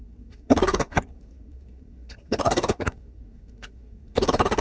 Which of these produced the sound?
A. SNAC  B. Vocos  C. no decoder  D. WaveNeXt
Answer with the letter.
A